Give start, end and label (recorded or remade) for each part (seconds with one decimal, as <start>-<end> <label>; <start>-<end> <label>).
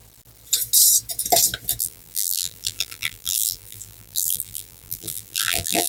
0.0-1.8 recorded; 1.8-5.9 remade